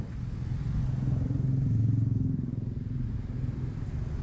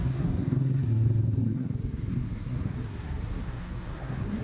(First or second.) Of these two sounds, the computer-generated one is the second